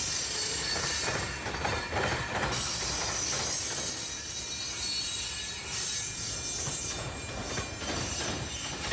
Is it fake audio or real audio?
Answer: real